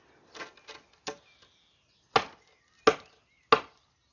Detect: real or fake real